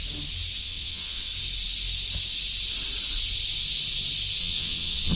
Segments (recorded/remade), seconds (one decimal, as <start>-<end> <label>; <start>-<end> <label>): 0.0-0.6 recorded; 0.6-1.3 remade; 1.3-4.4 recorded; 4.4-5.2 remade